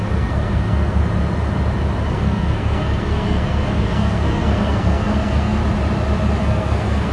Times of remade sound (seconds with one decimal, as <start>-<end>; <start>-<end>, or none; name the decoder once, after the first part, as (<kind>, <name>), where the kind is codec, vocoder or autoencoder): 0.0-1.0 (codec, SNAC); 2.1-5.6; 6.4-7.1